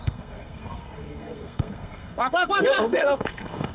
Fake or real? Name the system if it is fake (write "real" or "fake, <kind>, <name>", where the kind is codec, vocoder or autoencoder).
fake, codec, SNAC